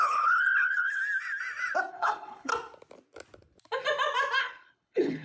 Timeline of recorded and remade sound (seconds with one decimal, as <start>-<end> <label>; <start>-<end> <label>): 0.0-1.0 remade; 1.0-1.9 recorded; 1.9-2.5 remade; 2.5-4.4 recorded; 4.4-5.2 remade